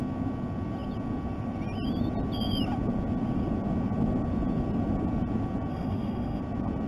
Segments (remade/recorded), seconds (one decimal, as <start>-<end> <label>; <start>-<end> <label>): 0.0-5.7 recorded; 5.7-6.4 remade; 6.4-6.9 recorded